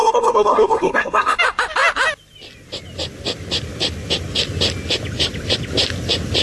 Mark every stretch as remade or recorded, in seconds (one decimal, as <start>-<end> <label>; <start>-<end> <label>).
0.0-1.4 remade; 1.4-6.4 recorded